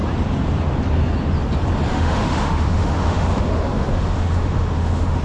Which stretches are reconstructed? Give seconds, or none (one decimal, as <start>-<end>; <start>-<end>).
1.9-5.2